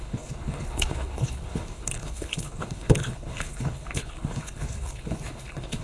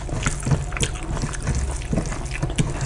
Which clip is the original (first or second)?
second